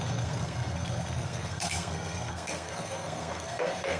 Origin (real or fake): fake